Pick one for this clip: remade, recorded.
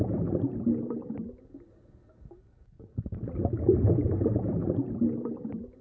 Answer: recorded